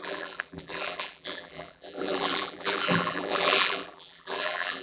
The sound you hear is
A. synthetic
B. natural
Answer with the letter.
A